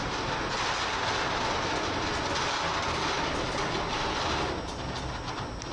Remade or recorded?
recorded